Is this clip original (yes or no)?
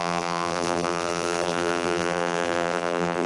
no